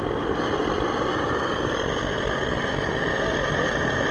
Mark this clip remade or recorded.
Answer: recorded